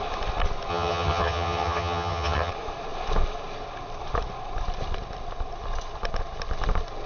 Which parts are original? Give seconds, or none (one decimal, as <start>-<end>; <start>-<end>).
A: 0.0-0.7; 2.5-7.1